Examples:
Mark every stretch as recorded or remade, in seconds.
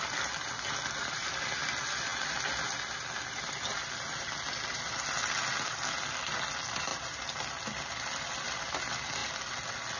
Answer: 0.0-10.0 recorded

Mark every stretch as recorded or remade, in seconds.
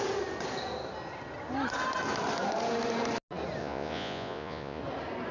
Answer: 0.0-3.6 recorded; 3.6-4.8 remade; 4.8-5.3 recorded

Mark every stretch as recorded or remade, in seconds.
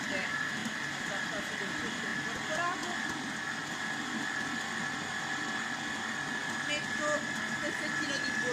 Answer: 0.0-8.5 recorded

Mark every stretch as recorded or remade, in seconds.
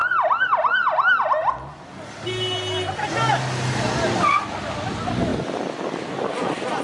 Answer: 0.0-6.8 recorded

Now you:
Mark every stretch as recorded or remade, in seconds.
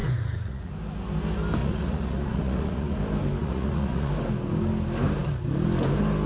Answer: 0.0-0.7 remade; 0.7-1.6 recorded; 1.6-3.0 remade; 3.0-3.4 recorded; 3.4-4.1 remade; 4.1-6.3 recorded